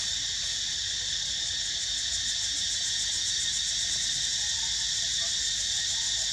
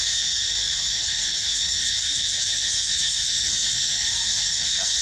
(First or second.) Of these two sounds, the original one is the first